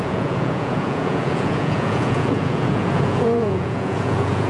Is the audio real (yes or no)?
no